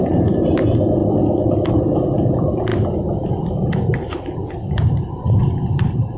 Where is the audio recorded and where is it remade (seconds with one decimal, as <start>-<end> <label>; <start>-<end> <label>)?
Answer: 0.0-1.0 remade; 1.0-1.7 recorded; 1.7-2.7 remade; 2.7-3.3 recorded; 3.3-6.2 remade